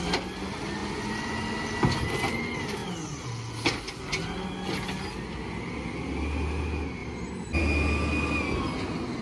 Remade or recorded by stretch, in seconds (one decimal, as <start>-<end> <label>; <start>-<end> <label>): 0.0-0.8 recorded; 0.8-1.4 remade; 1.4-9.2 recorded